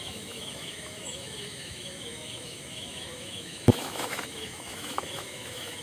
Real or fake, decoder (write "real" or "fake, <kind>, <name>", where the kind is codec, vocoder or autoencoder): fake, autoencoder, DAC-VAE